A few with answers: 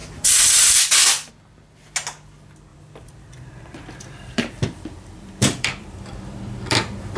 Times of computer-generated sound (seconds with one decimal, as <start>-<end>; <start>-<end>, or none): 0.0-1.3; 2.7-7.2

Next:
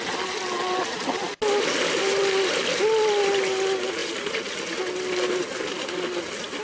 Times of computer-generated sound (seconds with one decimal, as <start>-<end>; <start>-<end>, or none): none

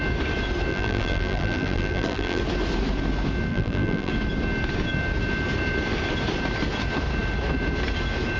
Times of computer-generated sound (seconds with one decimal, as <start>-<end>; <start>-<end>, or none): 0.7-2.4; 3.5-4.1

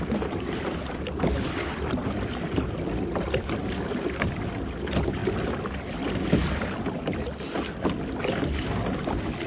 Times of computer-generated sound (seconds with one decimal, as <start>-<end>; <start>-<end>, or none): 0.0-5.2; 9.1-9.5

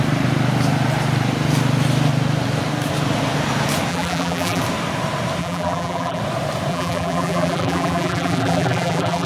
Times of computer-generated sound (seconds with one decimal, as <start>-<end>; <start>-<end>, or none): 3.9-4.6; 5.4-6.2; 6.7-9.3

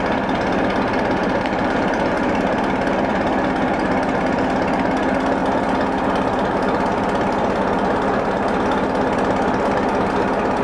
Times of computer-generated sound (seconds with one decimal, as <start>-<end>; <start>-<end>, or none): 1.2-3.1

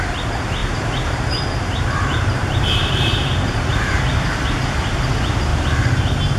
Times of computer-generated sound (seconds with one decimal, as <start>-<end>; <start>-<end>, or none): 0.6-4.0

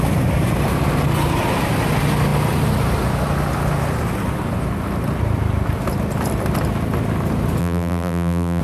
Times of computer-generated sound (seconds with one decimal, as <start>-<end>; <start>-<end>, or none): 7.6-8.6